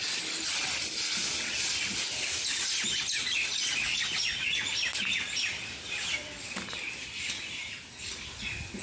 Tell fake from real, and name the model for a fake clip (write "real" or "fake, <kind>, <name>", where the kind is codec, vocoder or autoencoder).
real